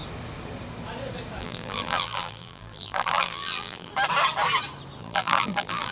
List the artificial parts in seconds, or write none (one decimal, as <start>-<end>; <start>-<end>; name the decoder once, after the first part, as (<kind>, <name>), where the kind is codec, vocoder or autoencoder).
1.4-3.9 (vocoder, BigVGAN v2); 5.0-5.9